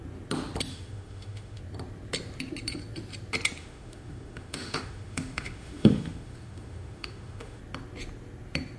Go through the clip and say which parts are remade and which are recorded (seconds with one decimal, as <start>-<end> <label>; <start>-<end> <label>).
0.0-0.7 recorded; 0.7-1.6 remade; 1.6-3.6 recorded; 3.6-7.6 remade; 7.6-8.8 recorded